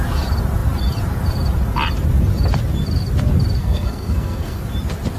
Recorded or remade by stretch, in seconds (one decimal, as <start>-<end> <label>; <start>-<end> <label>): 0.0-3.6 recorded; 3.6-4.6 remade; 4.6-5.2 recorded